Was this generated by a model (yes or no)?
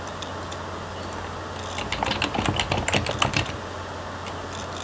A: no